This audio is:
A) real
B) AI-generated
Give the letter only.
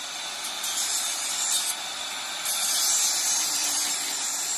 B